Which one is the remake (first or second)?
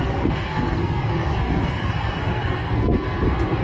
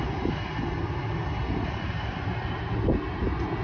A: first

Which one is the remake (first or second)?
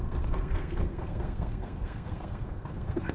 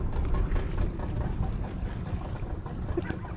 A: first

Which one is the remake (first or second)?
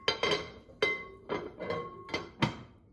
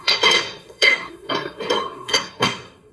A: second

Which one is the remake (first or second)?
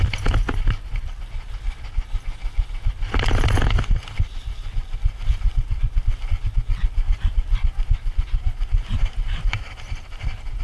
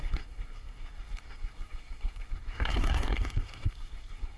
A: second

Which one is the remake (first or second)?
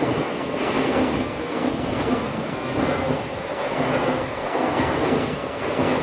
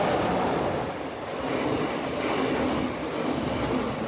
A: first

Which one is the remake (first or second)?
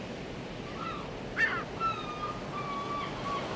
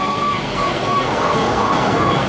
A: second